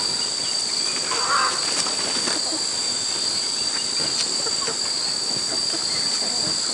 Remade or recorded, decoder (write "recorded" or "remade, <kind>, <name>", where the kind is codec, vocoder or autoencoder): recorded